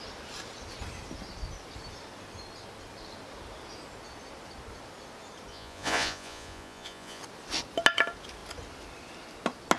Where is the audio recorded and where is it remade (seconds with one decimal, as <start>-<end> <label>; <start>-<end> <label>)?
0.0-5.5 recorded; 5.5-7.2 remade; 7.2-9.8 recorded

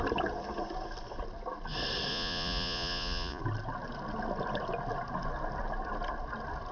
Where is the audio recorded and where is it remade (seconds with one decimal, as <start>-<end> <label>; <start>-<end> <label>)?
0.0-2.1 recorded; 2.1-3.4 remade; 3.4-6.7 recorded

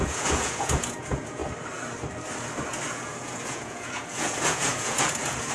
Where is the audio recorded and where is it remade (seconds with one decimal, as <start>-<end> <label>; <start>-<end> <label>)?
0.0-1.4 remade; 1.4-2.9 recorded; 2.9-5.5 remade

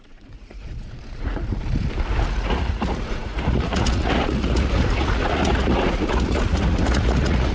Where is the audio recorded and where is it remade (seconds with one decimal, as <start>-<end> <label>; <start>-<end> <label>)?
0.0-1.6 remade; 1.6-2.3 recorded; 2.3-7.5 remade

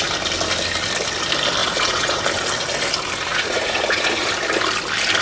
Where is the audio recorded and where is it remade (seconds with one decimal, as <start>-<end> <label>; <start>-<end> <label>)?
0.0-1.6 recorded; 1.6-2.2 remade; 2.2-3.3 recorded; 3.3-4.3 remade; 4.3-5.2 recorded

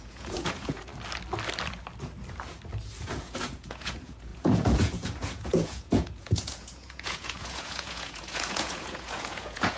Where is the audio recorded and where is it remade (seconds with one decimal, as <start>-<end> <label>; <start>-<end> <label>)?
0.0-0.9 remade; 0.9-3.0 recorded; 3.0-9.8 remade

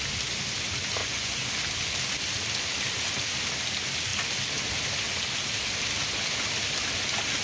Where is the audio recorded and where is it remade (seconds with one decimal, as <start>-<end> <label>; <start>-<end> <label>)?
0.0-1.0 recorded; 1.0-1.5 remade; 1.5-7.4 recorded